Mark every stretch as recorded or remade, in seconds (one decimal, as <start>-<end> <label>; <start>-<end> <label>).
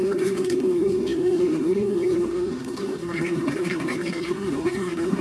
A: 0.0-5.2 remade